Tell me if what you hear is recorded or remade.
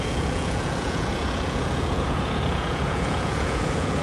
remade